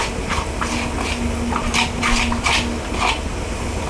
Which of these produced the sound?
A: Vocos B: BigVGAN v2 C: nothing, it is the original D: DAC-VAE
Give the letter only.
C